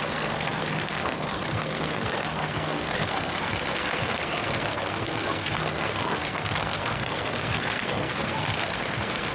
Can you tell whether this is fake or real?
fake